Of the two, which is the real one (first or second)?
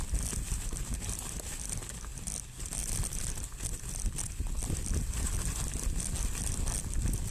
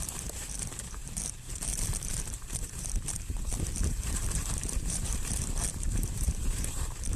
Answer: first